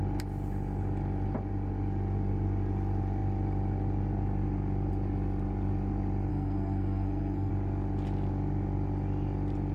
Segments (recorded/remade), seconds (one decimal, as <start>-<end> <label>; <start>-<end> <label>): 0.0-6.3 recorded; 6.3-7.5 remade; 7.5-9.7 recorded